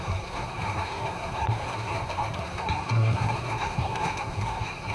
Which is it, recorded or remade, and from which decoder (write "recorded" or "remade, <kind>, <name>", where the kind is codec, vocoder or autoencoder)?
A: remade, codec, SNAC